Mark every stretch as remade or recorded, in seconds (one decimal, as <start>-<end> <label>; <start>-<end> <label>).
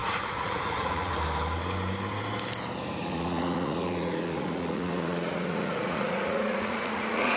0.0-1.1 remade; 1.1-3.0 recorded; 3.0-7.4 remade